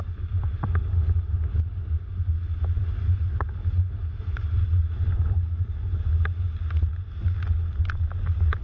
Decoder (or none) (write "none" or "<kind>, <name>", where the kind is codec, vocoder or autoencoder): none